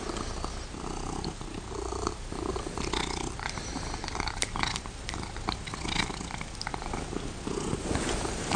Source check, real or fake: real